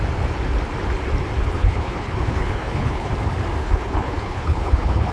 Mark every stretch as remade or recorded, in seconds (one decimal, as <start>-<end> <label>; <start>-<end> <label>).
0.0-1.4 recorded; 1.4-3.1 remade; 3.1-3.6 recorded; 3.6-5.1 remade